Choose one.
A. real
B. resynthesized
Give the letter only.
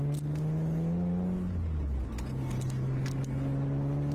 A